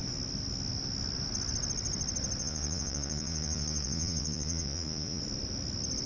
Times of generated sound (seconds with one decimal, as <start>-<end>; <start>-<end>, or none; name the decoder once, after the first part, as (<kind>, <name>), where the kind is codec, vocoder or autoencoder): 2.4-5.2 (vocoder, Vocos)